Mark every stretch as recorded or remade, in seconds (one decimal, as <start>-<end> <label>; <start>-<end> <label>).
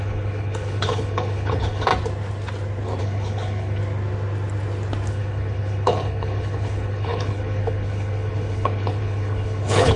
0.0-1.9 remade; 1.9-3.0 recorded; 3.0-3.8 remade; 3.8-5.1 recorded; 5.1-10.0 remade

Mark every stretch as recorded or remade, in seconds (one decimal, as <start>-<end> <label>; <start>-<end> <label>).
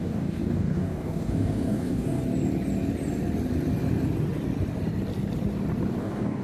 0.0-2.2 remade; 2.2-6.0 recorded; 6.0-6.4 remade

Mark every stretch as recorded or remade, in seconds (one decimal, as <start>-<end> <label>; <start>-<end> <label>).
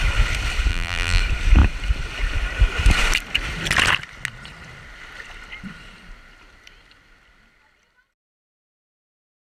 0.0-0.7 recorded; 0.7-1.2 remade; 1.2-9.5 recorded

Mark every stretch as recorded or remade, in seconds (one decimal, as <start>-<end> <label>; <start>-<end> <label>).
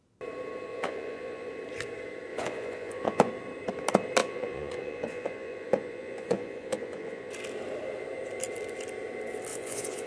0.0-0.7 recorded; 0.7-1.5 remade; 1.5-2.3 recorded; 2.3-3.3 remade; 3.3-4.2 recorded; 4.2-7.3 remade; 7.3-9.5 recorded; 9.5-10.1 remade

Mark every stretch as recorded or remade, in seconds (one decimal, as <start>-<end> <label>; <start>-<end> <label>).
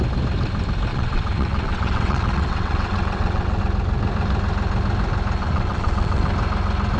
0.0-0.9 recorded; 0.9-3.6 remade; 3.6-5.4 recorded; 5.4-6.3 remade; 6.3-7.0 recorded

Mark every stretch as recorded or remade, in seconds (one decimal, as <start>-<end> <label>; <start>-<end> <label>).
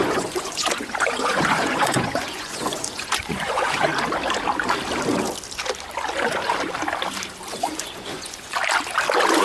0.0-3.9 remade; 3.9-7.5 recorded; 7.5-8.6 remade; 8.6-9.4 recorded